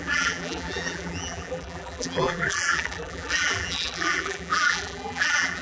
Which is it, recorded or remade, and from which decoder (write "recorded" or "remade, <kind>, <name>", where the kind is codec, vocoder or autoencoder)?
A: remade, vocoder, BigVGAN v2